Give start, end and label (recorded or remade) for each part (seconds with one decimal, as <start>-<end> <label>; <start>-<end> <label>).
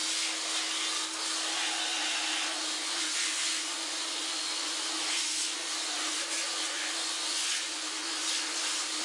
0.0-1.5 recorded; 1.5-9.0 remade